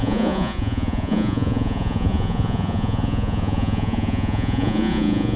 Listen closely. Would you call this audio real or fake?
fake